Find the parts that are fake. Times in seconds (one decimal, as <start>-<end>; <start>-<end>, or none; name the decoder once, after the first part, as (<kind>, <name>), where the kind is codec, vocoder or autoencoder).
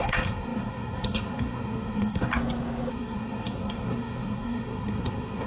0.0-2.3 (codec, SNAC); 2.9-5.5